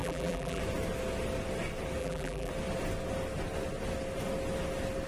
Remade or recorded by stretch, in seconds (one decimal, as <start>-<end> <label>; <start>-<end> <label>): 0.0-0.6 remade; 0.6-2.0 recorded; 2.0-2.5 remade; 2.5-5.1 recorded

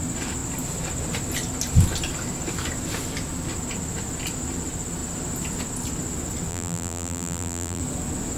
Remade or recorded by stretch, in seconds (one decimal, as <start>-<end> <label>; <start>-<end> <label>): 0.0-6.5 recorded; 6.5-7.8 remade; 7.8-8.4 recorded

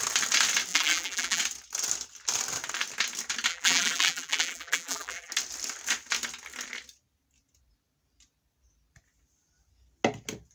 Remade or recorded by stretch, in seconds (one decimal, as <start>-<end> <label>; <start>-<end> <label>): 0.0-0.7 recorded; 0.7-1.4 remade; 1.4-3.5 recorded; 3.5-5.3 remade; 5.3-10.5 recorded

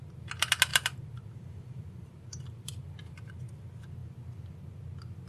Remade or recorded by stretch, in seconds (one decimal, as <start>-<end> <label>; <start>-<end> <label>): 0.0-0.7 recorded; 0.7-3.3 remade; 3.3-5.3 recorded

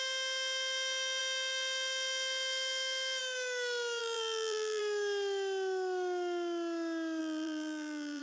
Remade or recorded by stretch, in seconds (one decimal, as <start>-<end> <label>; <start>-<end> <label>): 0.0-4.0 recorded; 4.0-4.8 remade; 4.8-7.2 recorded; 7.2-8.2 remade

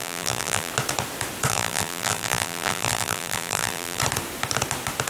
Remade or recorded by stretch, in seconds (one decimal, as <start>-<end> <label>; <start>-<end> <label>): 0.0-0.7 remade; 0.7-1.5 recorded; 1.5-4.0 remade; 4.0-5.1 recorded

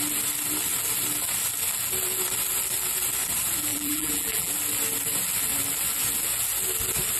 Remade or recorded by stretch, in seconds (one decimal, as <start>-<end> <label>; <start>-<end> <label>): 0.0-3.7 recorded; 3.7-4.5 remade; 4.5-7.2 recorded